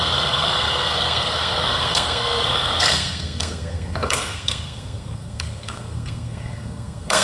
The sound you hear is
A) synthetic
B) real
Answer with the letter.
A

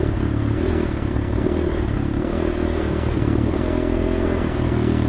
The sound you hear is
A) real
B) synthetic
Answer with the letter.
B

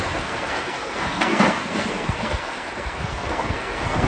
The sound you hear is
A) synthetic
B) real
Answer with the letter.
A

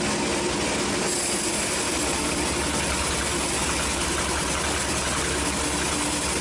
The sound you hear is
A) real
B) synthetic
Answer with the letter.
A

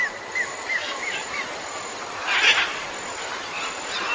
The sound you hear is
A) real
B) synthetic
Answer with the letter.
A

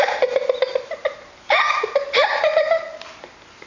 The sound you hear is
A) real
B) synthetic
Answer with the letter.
A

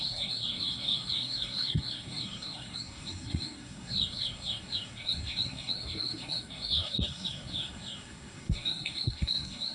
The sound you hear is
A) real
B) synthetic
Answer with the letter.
B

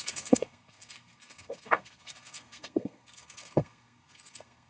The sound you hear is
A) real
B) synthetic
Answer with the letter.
B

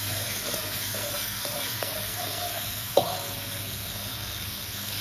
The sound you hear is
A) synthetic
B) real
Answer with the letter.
A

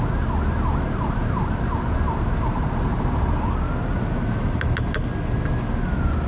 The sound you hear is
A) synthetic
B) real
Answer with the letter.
B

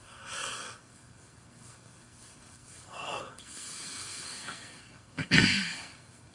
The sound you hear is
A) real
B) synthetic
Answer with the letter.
B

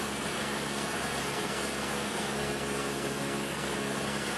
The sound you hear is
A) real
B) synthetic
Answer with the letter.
B